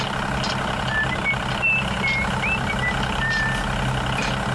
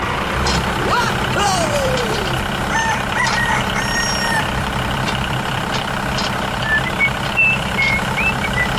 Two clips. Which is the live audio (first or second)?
first